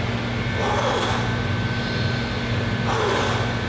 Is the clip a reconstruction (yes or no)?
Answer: no